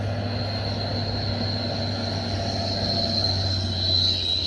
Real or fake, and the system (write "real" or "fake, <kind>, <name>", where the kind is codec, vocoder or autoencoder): real